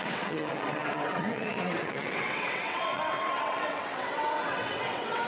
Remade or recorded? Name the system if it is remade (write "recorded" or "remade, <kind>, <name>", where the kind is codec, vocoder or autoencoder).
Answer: remade, vocoder, WaveNeXt